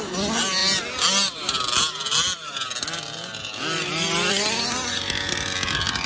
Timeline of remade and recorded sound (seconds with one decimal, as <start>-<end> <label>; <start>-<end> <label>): 0.0-6.1 recorded